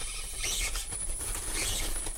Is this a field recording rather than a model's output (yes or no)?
no